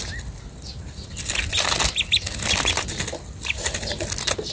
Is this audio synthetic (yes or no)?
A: no